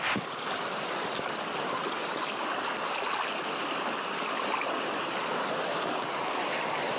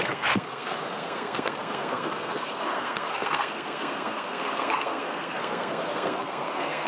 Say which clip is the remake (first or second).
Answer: second